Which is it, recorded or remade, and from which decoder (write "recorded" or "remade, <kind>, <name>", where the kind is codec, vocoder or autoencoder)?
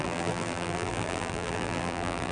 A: remade, vocoder, BigVGAN v2